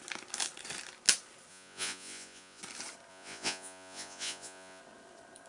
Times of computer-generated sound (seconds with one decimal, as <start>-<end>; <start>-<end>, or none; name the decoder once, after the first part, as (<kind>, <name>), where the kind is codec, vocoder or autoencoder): 1.5-2.6 (vocoder, Vocos); 3.1-4.8